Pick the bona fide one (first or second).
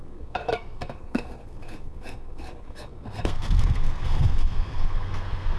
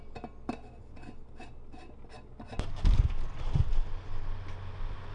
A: second